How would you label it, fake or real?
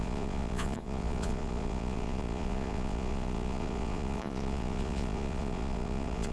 fake